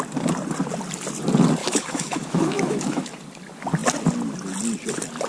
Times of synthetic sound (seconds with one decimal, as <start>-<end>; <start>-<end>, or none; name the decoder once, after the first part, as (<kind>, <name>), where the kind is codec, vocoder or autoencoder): 1.6-3.1 (autoencoder, DAC-VAE)